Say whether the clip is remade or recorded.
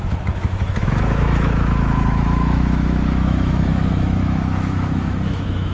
remade